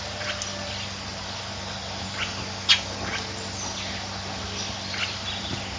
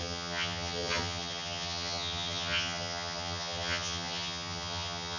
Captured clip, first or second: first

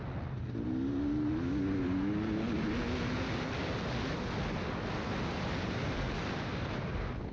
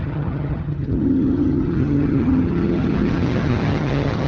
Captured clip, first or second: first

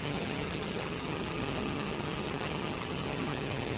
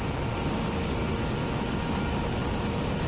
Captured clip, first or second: second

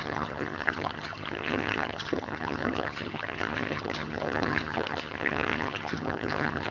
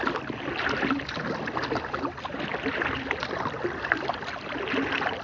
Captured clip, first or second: second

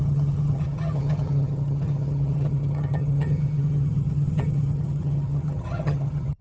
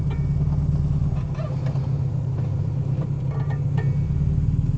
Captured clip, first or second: second